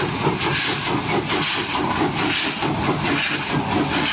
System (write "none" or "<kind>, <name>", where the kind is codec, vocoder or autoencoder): none